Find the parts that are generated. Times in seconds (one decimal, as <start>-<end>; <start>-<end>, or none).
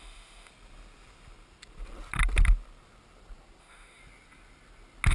0.0-0.5; 3.6-4.0